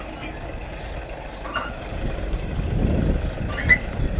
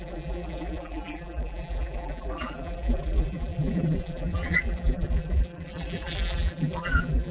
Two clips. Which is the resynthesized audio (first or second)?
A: second